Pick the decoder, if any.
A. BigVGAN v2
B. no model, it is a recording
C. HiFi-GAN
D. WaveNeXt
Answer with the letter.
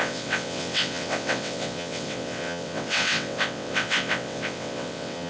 D